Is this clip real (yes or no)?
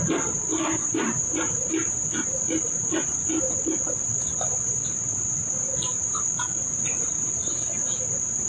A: yes